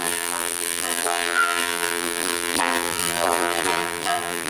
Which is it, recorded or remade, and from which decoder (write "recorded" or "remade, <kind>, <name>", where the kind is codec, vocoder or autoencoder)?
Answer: remade, vocoder, BigVGAN v2